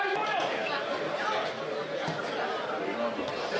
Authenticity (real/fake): real